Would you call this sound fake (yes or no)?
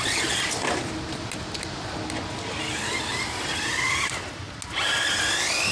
no